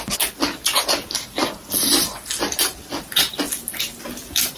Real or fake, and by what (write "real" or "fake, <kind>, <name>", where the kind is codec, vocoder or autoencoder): real